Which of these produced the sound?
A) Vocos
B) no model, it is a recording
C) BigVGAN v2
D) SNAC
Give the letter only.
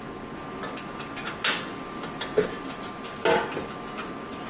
B